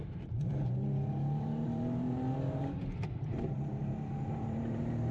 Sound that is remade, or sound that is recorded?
remade